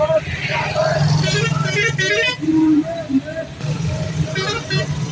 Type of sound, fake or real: real